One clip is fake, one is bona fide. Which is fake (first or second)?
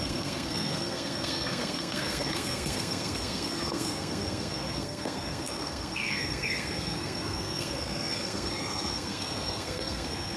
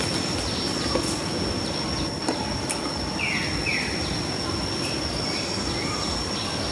first